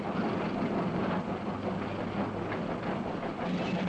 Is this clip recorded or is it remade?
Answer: recorded